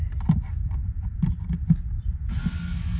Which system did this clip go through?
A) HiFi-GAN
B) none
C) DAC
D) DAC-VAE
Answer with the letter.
B